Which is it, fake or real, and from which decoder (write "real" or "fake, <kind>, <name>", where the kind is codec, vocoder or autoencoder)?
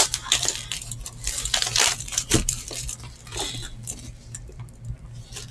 fake, vocoder, BigVGAN v2